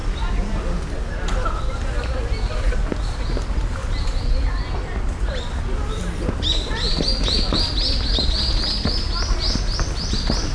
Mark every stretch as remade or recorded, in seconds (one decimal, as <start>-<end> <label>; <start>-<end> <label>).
0.0-10.5 recorded